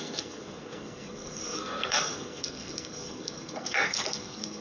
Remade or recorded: remade